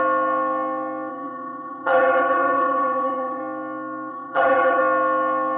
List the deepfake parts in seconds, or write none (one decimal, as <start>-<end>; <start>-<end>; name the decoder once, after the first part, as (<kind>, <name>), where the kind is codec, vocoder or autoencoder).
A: 1.1-3.4 (vocoder, HiFi-GAN); 4.1-4.8